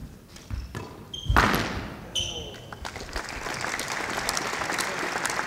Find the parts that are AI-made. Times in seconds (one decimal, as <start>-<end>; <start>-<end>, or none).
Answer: none